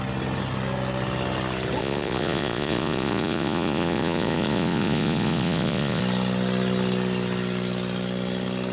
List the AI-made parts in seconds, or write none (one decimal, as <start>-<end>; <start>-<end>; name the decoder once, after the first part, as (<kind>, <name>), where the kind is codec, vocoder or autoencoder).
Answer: 1.8-6.0 (vocoder, Vocos)